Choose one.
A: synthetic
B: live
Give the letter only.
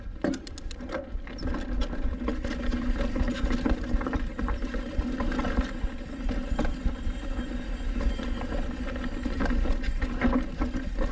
B